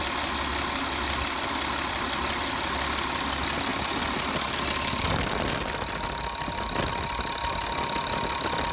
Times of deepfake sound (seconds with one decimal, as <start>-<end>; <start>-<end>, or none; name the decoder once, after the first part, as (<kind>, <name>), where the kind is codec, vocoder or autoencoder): none